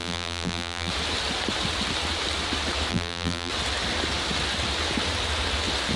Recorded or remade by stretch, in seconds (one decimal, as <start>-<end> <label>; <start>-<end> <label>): 0.0-0.9 remade; 0.9-2.9 recorded; 2.9-3.5 remade; 3.5-6.0 recorded